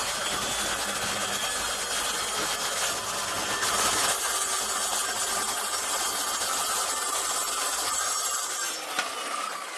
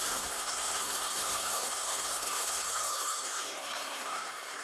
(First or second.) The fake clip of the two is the second